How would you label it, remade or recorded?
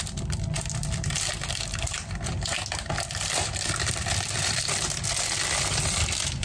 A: recorded